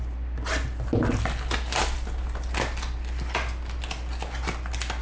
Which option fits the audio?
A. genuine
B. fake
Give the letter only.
A